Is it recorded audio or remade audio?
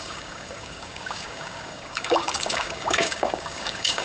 remade